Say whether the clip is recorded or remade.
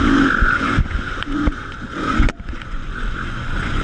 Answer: remade